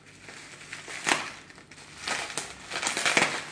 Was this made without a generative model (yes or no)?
yes